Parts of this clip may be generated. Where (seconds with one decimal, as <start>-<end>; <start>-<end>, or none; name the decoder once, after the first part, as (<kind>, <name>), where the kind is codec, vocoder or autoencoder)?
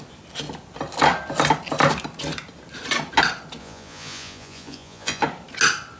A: 3.6-5.2 (vocoder, Vocos)